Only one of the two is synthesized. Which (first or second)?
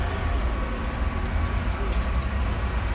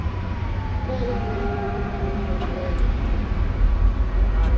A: second